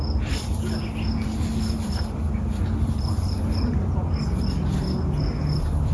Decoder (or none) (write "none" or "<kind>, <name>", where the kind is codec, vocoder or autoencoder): none